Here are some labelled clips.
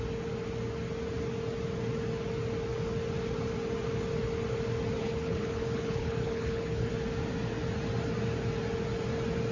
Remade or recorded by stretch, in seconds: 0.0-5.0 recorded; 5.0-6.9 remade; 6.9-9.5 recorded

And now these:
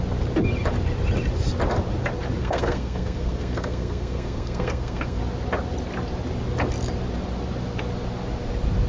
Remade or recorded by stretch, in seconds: 0.0-2.4 recorded; 2.4-5.2 remade; 5.2-8.9 recorded

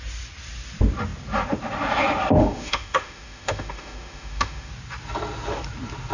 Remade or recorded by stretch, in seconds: 0.0-2.4 recorded; 2.4-4.7 remade; 4.7-6.1 recorded

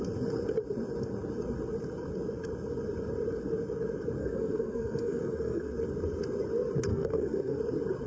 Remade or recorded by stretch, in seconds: 0.0-4.2 recorded; 4.2-5.7 remade; 5.7-6.9 recorded; 6.9-7.6 remade; 7.6-8.1 recorded

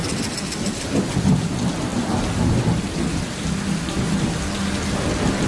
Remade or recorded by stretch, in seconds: 0.0-5.5 recorded

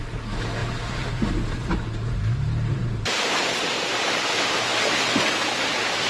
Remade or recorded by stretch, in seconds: 0.0-6.1 recorded

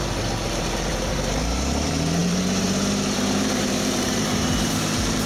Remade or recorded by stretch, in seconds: 0.0-0.9 recorded; 0.9-5.3 remade